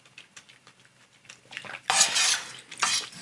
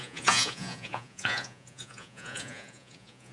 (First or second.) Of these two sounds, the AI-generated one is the second